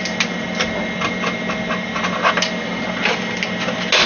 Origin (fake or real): real